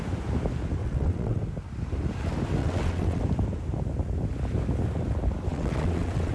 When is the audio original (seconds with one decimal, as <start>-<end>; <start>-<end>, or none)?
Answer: 0.0-0.8; 1.4-2.6; 3.2-5.5